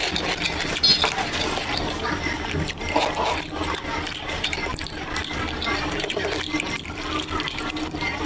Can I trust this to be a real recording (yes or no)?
yes